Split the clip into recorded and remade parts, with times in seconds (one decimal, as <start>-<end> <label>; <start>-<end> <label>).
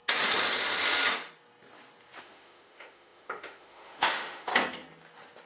0.0-2.2 recorded; 2.2-4.5 remade; 4.5-5.5 recorded